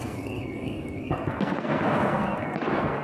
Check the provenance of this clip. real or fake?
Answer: fake